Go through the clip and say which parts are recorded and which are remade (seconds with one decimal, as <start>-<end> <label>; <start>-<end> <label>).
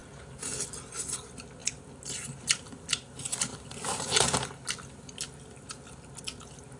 0.0-0.7 remade; 0.7-1.6 recorded; 1.6-2.7 remade; 2.7-3.5 recorded; 3.5-4.9 remade; 4.9-6.8 recorded